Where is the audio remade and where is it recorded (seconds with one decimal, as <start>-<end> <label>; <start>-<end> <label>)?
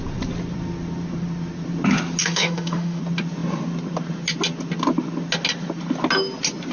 0.0-2.2 recorded; 2.2-3.0 remade; 3.0-6.7 recorded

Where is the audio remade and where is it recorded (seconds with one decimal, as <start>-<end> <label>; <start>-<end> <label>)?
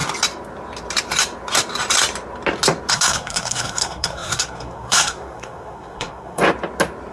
0.0-2.9 recorded; 2.9-6.4 remade; 6.4-7.1 recorded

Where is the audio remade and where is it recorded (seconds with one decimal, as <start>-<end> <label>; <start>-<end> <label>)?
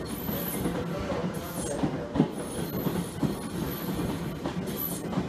0.0-5.3 recorded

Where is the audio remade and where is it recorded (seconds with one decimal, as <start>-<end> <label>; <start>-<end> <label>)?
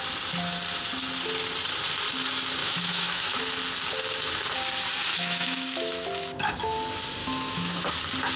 0.0-2.6 recorded; 2.6-3.4 remade; 3.4-5.1 recorded; 5.1-6.5 remade; 6.5-7.2 recorded; 7.2-7.9 remade; 7.9-8.4 recorded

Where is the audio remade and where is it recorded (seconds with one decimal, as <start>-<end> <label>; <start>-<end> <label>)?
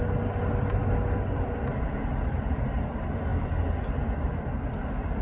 0.0-5.2 recorded